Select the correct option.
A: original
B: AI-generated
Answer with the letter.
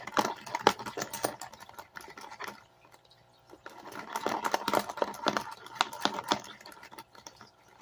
A